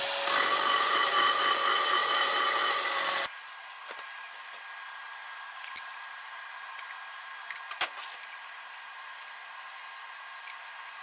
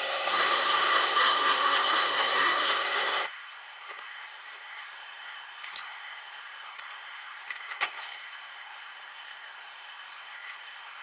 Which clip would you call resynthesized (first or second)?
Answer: second